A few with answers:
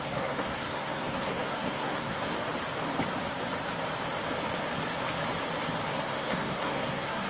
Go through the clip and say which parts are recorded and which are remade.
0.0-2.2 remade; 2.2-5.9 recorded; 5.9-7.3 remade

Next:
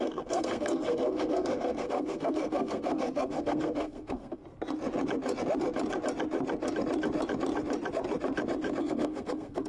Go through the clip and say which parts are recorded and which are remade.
0.0-4.4 remade; 4.4-8.8 recorded; 8.8-9.7 remade

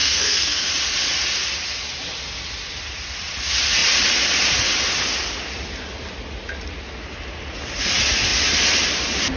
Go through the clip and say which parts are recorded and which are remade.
0.0-0.7 remade; 0.7-9.4 recorded

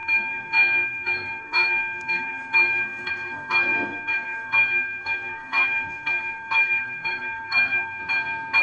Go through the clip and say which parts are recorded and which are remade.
0.0-8.0 remade; 8.0-8.6 recorded

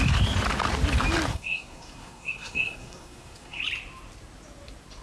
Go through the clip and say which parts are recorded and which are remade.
0.0-1.3 recorded; 1.3-3.6 remade; 3.6-5.0 recorded

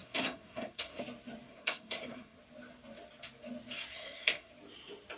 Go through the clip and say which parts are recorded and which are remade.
0.0-1.0 remade; 1.0-1.5 recorded; 1.5-2.4 remade; 2.4-3.9 recorded; 3.9-4.5 remade; 4.5-5.2 recorded

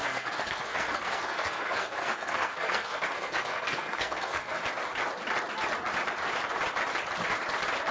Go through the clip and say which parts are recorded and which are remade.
0.0-4.6 remade; 4.6-7.9 recorded